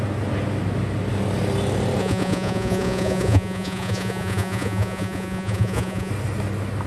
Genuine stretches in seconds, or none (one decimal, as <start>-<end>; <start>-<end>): 0.0-2.0; 6.1-6.9